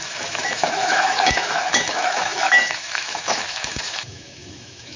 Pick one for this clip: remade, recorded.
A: remade